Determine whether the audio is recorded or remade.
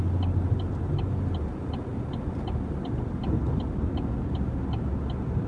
recorded